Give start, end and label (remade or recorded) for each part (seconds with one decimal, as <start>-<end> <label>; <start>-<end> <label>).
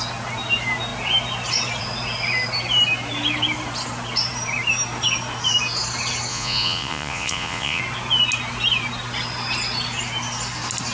0.0-6.3 recorded; 6.3-7.8 remade; 7.8-10.9 recorded